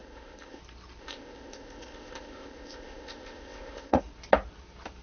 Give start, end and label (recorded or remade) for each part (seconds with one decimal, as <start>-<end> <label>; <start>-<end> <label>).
0.0-0.6 remade; 0.6-1.0 recorded; 1.0-4.0 remade; 4.0-5.0 recorded